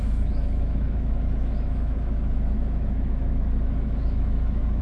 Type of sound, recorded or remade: remade